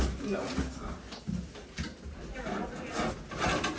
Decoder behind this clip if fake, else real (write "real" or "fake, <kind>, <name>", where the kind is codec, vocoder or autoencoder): real